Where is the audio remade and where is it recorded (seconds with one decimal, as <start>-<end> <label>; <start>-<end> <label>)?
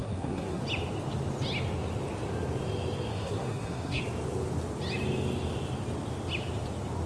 0.0-0.6 remade; 0.6-3.1 recorded; 3.1-4.0 remade; 4.0-7.1 recorded